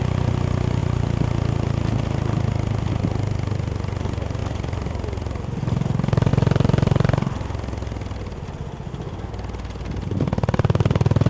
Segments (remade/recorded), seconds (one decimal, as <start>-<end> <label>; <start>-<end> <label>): 0.0-4.4 recorded; 4.4-5.6 remade; 5.6-11.3 recorded